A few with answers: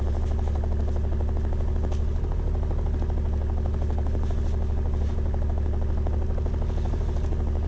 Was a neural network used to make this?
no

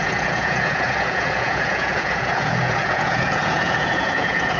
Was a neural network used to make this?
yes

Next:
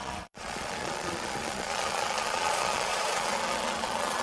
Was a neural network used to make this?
yes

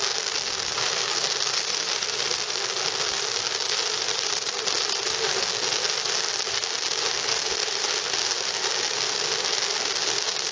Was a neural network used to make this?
no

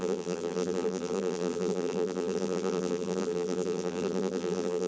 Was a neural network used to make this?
yes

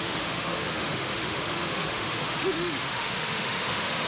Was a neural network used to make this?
yes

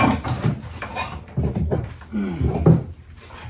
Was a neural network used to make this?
no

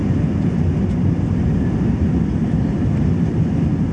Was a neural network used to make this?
no